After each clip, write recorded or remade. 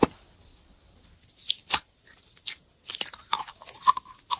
recorded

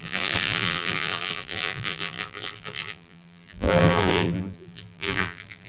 remade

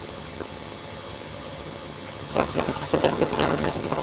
remade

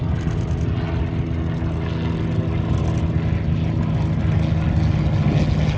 recorded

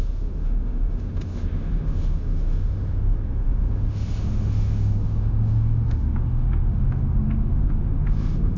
remade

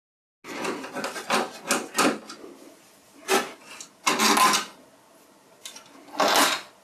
recorded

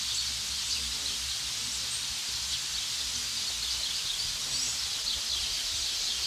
recorded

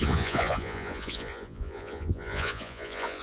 remade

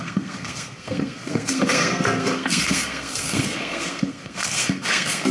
remade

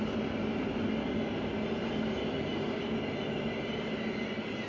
recorded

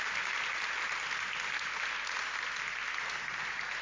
recorded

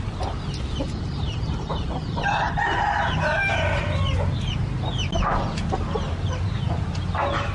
recorded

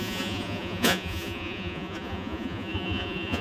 remade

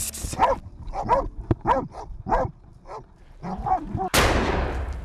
recorded